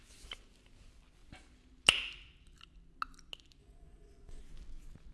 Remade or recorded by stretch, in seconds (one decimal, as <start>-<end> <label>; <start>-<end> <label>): 0.0-3.6 recorded; 3.6-4.4 remade; 4.4-5.1 recorded